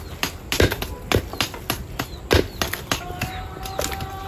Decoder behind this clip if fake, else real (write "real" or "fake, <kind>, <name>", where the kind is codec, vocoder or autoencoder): real